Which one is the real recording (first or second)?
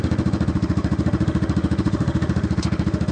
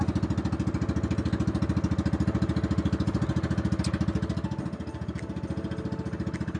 second